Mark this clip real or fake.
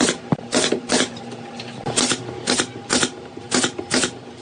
real